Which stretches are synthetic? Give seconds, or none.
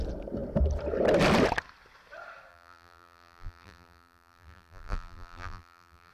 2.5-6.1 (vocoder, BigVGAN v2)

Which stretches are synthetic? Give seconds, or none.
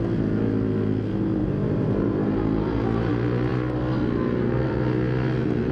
1.4-3.1 (vocoder, BigVGAN v2)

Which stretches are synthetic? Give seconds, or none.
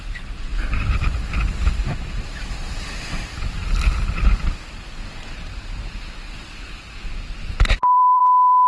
0.0-3.6 (vocoder, BigVGAN v2); 6.6-8.7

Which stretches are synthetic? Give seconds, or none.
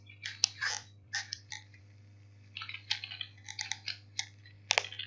0.6-1.8 (vocoder, BigVGAN v2)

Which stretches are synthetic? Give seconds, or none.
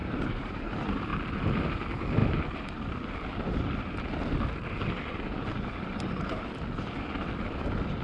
0.0-0.6 (vocoder, BigVGAN v2)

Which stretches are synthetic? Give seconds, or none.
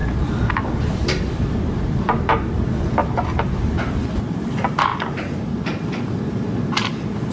0.5-4.9 (vocoder, BigVGAN v2); 6.0-7.3